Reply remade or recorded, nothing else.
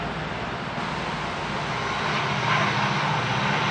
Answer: recorded